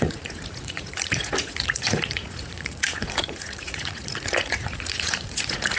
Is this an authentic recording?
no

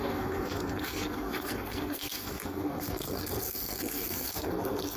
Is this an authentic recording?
no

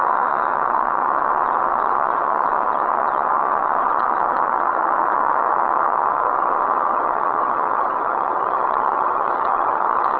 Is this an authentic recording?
no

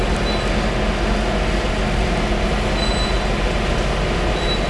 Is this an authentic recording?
yes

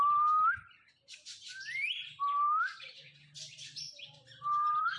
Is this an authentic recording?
no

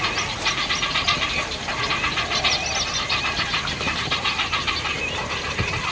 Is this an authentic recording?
yes